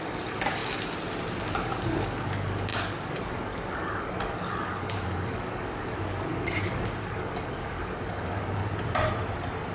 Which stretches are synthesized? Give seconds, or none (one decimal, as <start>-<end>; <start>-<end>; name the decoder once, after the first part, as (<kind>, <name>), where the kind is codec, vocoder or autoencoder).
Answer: 0.0-0.6 (codec, DAC); 1.4-8.6